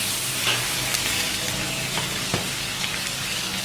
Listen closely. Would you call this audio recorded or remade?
remade